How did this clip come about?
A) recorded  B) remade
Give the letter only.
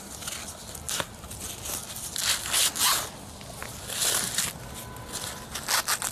A